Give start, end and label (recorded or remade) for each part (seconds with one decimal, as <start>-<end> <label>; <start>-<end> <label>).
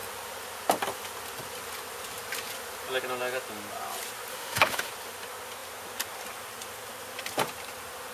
0.0-4.3 recorded; 4.3-4.9 remade; 4.9-8.1 recorded